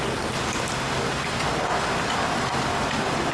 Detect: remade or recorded recorded